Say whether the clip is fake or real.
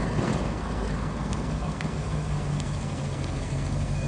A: fake